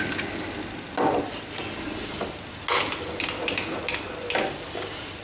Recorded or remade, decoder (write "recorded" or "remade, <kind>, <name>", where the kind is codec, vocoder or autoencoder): recorded